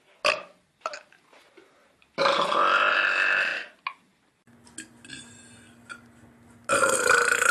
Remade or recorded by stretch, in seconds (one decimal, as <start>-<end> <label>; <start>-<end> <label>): 0.0-7.5 recorded

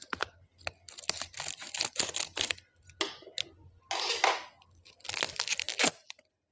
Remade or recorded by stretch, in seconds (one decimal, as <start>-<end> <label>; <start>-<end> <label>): 0.0-6.5 recorded

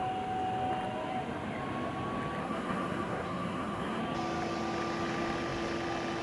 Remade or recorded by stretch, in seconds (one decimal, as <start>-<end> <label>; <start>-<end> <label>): 0.0-2.4 recorded; 2.4-4.0 remade; 4.0-6.2 recorded

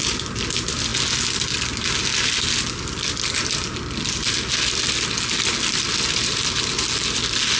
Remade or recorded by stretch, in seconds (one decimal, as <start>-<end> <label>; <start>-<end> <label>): 0.0-7.6 recorded

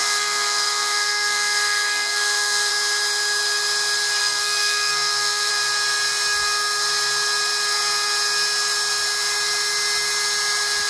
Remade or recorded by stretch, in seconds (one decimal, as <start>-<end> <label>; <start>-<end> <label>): 0.0-2.7 remade; 2.7-4.2 recorded; 4.2-5.5 remade; 5.5-10.9 recorded

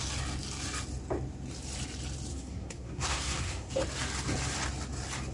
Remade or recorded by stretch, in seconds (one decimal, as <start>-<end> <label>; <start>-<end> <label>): 0.0-2.3 recorded; 2.3-3.7 remade; 3.7-5.3 recorded

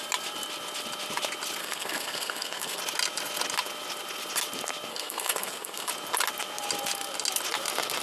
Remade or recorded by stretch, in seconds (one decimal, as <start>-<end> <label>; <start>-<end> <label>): 0.0-1.6 recorded; 1.6-2.8 remade; 2.8-4.9 recorded; 4.9-5.9 remade; 5.9-8.0 recorded